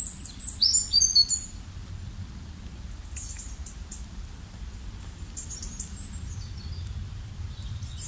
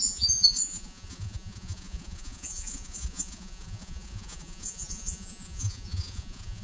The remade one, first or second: second